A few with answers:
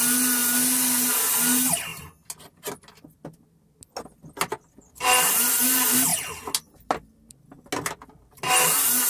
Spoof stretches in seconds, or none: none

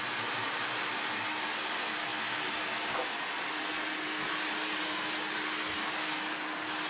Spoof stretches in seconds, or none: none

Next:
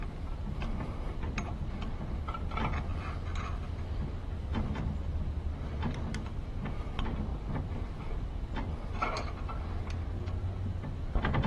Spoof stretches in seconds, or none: 7.3-7.8 (vocoder, BigVGAN v2)

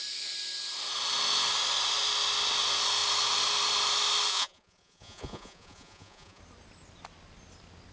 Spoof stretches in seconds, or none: 4.3-6.4 (vocoder, Vocos)

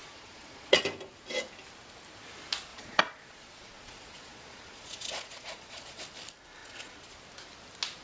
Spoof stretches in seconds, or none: 0.0-0.8 (vocoder, Vocos); 2.7-6.0; 6.6-7.1

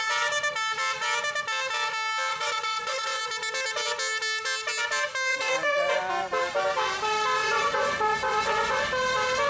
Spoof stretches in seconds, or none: 2.3-3.2 (vocoder, Vocos); 5.3-6.0; 7.4-8.8

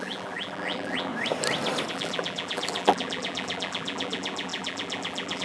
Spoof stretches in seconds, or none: 0.0-1.1 (vocoder, BigVGAN v2); 1.9-5.4

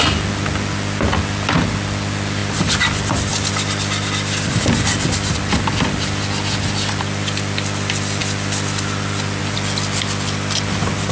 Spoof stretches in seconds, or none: none